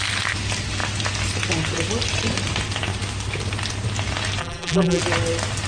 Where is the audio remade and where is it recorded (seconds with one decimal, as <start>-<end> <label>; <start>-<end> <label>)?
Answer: 0.0-4.4 recorded; 4.4-5.0 remade; 5.0-5.7 recorded